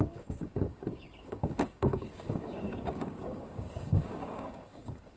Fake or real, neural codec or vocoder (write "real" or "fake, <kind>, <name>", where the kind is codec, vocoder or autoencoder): fake, codec, DAC